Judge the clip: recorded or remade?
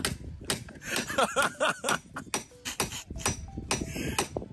recorded